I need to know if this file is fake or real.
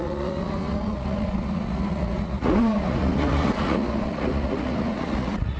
fake